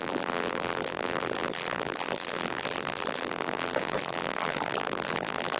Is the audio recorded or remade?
remade